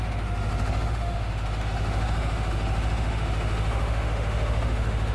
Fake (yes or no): yes